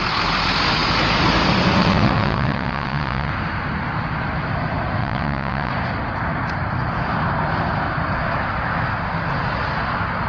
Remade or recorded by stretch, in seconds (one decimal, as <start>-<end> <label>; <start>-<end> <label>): 0.0-1.8 recorded; 1.8-3.3 remade; 3.3-5.0 recorded; 5.0-5.7 remade; 5.7-10.3 recorded